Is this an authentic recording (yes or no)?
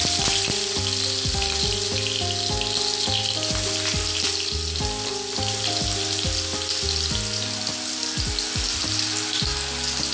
yes